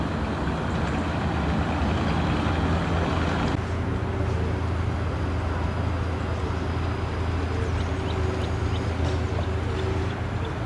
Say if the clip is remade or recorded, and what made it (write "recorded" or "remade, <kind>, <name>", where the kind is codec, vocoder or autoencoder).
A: recorded